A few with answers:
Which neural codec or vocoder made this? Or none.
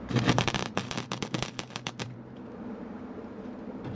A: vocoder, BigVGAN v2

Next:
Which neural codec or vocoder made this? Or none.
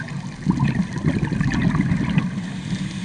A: none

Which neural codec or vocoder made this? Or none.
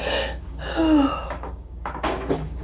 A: codec, DAC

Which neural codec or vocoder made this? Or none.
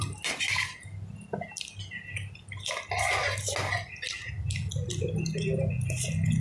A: none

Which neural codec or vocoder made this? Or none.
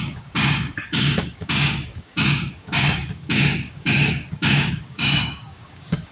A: codec, DAC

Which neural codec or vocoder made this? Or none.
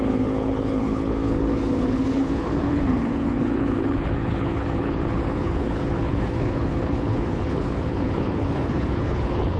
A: codec, HILCodec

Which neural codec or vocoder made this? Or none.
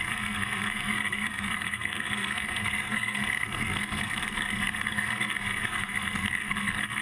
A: codec, SNAC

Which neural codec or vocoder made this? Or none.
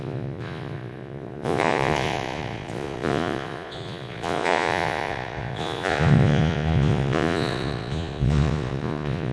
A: vocoder, Vocos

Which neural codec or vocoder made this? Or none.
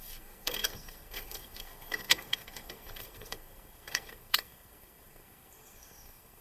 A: codec, SNAC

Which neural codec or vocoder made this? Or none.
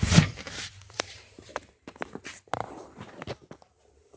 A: none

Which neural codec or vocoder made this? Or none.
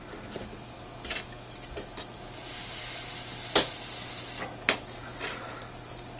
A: none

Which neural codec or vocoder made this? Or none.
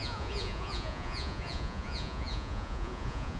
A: vocoder, Vocos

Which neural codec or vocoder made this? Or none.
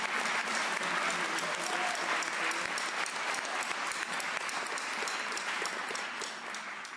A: none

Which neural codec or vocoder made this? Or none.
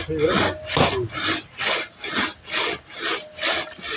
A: none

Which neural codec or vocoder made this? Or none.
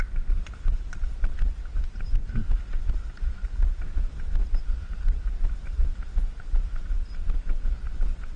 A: none